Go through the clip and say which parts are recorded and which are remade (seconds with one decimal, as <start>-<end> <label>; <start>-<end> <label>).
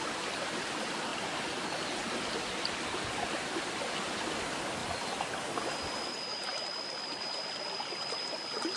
0.0-8.8 recorded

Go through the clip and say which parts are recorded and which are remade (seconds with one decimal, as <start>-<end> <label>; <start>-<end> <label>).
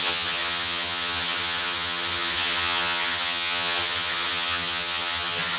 0.0-5.6 remade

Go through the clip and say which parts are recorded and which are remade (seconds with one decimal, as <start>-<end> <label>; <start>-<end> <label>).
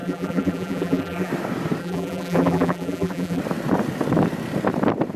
0.0-1.3 remade; 1.3-1.8 recorded; 1.8-3.4 remade; 3.4-5.2 recorded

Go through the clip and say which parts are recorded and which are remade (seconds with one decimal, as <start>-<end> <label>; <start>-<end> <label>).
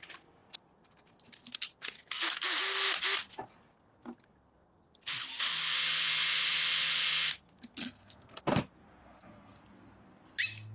0.0-7.8 recorded; 7.8-8.4 remade; 8.4-9.0 recorded; 9.0-9.6 remade; 9.6-10.7 recorded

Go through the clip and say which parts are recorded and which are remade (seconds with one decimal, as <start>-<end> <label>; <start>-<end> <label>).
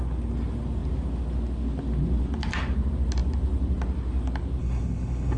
0.0-4.6 recorded; 4.6-5.4 remade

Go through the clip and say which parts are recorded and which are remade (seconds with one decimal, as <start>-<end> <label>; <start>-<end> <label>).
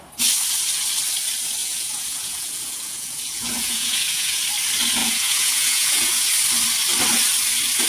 0.0-1.6 recorded; 1.6-4.4 remade; 4.4-5.0 recorded; 5.0-6.3 remade; 6.3-7.9 recorded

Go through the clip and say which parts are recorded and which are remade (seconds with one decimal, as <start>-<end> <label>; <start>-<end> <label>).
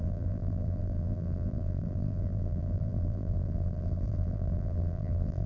0.0-5.5 remade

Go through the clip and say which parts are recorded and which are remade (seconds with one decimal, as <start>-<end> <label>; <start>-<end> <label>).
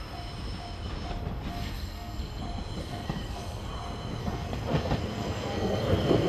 0.0-1.5 recorded; 1.5-2.4 remade; 2.4-2.8 recorded; 2.8-3.7 remade; 3.7-4.2 recorded; 4.2-6.3 remade